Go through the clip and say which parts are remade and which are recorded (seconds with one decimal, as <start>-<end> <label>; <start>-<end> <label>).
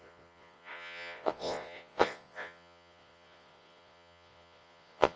0.0-5.2 remade